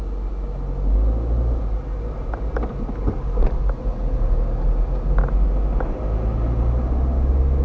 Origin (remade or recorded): recorded